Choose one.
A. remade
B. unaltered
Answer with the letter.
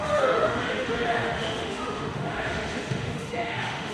A